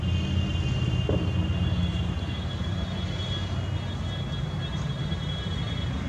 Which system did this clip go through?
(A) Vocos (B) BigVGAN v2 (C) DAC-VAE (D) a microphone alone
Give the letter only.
D